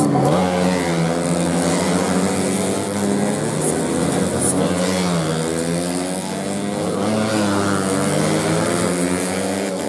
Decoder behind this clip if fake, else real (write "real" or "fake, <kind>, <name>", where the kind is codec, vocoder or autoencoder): real